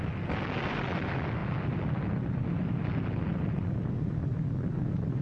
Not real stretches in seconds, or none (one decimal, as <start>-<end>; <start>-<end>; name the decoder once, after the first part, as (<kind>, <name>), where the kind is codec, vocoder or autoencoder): none